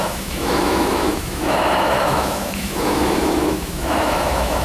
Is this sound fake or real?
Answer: fake